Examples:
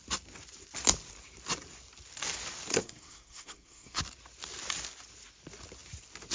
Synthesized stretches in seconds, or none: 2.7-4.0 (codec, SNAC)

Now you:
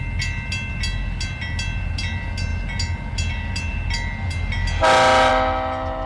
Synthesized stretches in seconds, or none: none

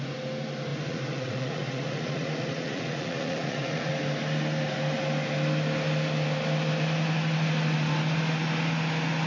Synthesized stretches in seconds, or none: 0.7-3.9 (vocoder, Vocos)

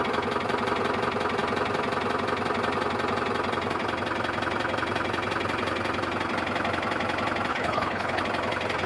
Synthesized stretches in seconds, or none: 7.5-8.2 (codec, HILCodec)

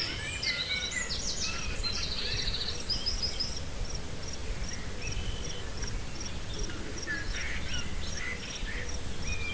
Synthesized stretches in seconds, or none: none